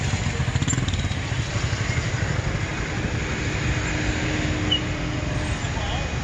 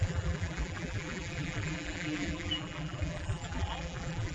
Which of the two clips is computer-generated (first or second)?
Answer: second